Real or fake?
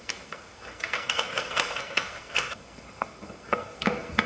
fake